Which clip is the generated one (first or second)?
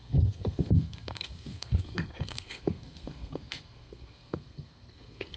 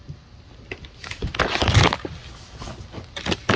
first